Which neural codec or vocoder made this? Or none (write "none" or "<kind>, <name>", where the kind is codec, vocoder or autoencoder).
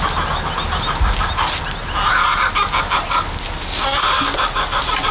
none